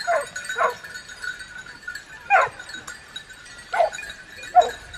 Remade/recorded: recorded